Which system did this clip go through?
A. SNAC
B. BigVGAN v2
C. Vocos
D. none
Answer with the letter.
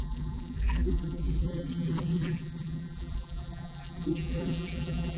B